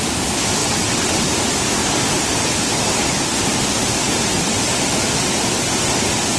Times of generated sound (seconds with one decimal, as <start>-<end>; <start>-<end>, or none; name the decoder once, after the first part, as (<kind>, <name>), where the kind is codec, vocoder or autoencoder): 0.6-1.2 (vocoder, WaveNeXt)